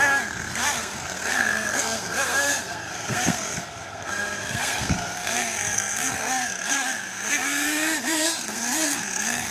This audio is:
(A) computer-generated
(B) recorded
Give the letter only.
A